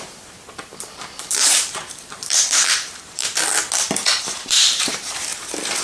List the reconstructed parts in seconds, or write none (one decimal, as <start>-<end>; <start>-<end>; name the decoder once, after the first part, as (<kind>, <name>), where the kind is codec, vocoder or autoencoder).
0.0-3.2 (vocoder, BigVGAN v2); 4.2-5.3